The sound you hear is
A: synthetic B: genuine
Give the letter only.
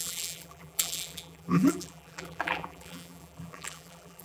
A